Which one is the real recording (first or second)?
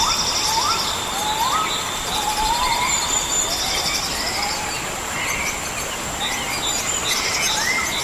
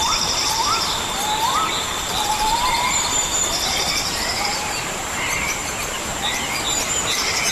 first